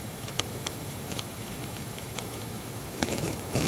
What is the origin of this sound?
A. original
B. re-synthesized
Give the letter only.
B